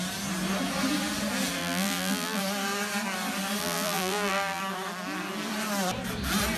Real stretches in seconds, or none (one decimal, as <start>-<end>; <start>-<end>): 0.0-1.6; 2.4-3.6; 4.6-6.6